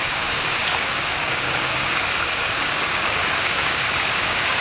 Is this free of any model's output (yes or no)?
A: no